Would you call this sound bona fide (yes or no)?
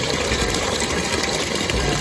no